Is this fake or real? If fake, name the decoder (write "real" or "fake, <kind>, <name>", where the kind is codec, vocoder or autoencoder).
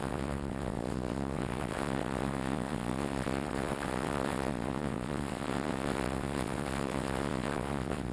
fake, vocoder, WaveNeXt